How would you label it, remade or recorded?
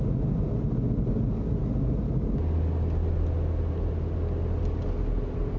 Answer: recorded